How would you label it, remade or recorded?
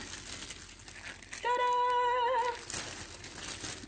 recorded